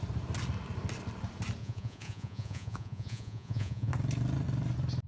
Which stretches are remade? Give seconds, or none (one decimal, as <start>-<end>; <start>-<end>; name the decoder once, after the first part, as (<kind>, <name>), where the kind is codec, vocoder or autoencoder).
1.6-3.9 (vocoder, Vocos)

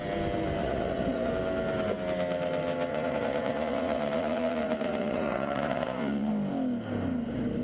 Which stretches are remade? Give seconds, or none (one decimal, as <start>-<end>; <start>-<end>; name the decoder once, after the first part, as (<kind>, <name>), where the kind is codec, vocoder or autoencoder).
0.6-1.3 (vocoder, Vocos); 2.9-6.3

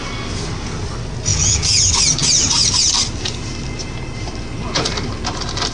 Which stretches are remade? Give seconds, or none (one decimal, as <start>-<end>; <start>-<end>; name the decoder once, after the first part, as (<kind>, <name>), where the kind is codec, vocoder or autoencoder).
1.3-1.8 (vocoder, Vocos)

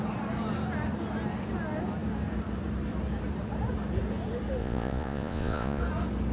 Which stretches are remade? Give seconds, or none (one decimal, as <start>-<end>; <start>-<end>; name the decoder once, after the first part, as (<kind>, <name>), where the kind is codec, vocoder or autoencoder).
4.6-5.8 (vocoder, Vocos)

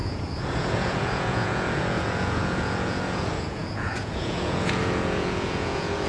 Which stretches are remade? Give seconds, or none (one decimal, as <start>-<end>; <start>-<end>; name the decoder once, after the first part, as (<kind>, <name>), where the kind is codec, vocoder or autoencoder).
0.0-6.1 (vocoder, Vocos)